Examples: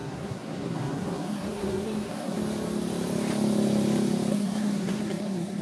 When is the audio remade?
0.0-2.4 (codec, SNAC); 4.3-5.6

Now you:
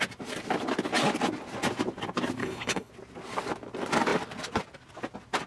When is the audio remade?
2.4-2.9 (codec, HILCodec)

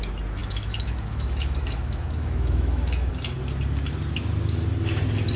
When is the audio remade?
0.4-3.1 (autoencoder, DAC-VAE)

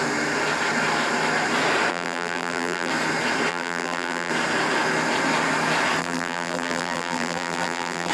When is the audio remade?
1.9-2.9 (vocoder, BigVGAN v2); 3.5-4.3; 6.0-8.1

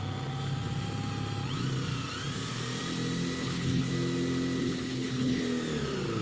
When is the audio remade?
3.4-3.9 (codec, HILCodec); 4.6-5.4

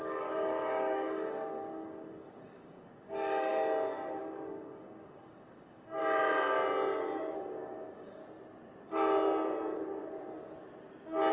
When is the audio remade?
0.0-3.5 (codec, DAC); 4.2-6.0; 7.2-8.2

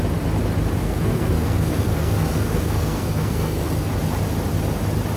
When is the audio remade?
0.8-3.9 (codec, SNAC)